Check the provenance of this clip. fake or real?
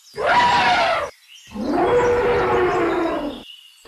real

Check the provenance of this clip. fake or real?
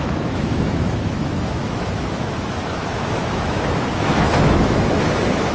fake